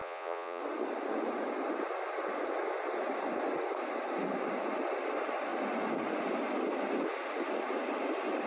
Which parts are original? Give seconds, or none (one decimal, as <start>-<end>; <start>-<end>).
0.6-8.5